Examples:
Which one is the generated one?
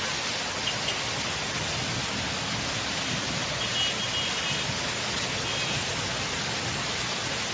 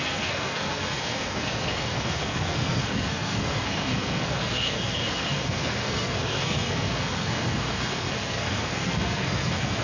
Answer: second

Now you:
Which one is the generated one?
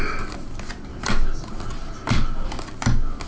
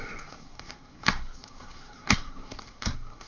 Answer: second